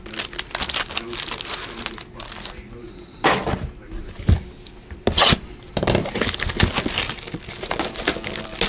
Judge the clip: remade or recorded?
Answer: recorded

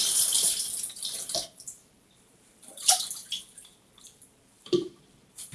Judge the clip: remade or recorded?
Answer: remade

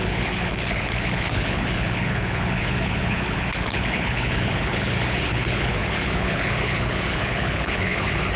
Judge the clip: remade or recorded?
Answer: remade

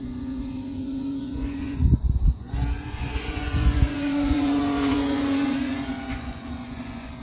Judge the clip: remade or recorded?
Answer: remade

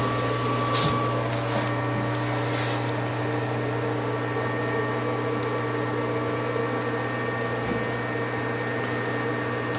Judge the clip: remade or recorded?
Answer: recorded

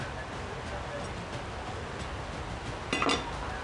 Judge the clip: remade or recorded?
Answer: recorded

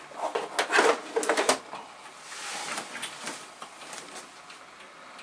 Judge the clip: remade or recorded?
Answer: recorded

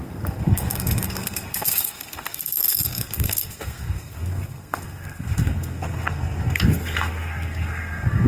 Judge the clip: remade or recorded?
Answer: remade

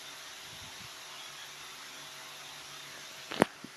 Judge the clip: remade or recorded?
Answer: recorded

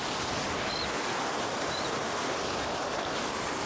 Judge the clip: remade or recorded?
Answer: recorded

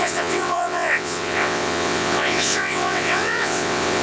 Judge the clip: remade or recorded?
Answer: remade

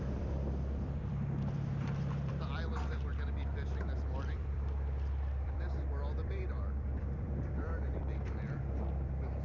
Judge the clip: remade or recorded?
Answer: remade